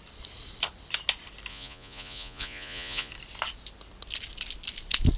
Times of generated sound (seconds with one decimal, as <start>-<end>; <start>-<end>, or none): 1.5-3.1